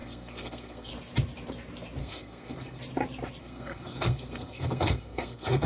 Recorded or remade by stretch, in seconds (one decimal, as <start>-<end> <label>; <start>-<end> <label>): 0.0-0.9 remade; 0.9-2.0 recorded; 2.0-2.8 remade; 2.8-3.4 recorded; 3.4-5.7 remade